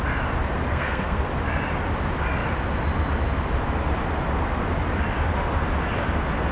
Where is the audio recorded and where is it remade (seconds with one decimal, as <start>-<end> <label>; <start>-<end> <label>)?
0.0-0.7 recorded; 0.7-1.3 remade; 1.3-6.5 recorded